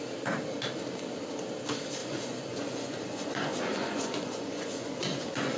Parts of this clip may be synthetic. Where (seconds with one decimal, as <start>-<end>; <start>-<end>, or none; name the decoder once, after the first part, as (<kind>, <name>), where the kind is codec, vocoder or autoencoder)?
2.0-5.6 (vocoder, Vocos)